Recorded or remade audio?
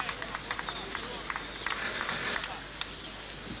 recorded